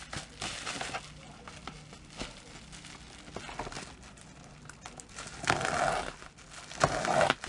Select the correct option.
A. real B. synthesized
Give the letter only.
A